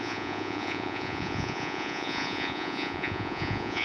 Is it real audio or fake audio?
fake